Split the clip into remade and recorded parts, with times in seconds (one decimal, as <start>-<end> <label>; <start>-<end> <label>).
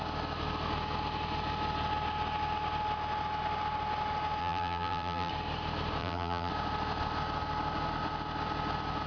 0.0-4.4 recorded; 4.4-5.3 remade; 5.3-6.0 recorded; 6.0-6.5 remade; 6.5-9.1 recorded